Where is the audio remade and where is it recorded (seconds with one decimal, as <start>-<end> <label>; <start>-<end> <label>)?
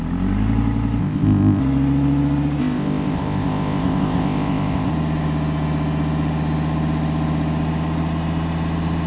0.0-1.0 recorded; 1.0-1.6 remade; 1.6-2.6 recorded; 2.6-4.9 remade; 4.9-9.1 recorded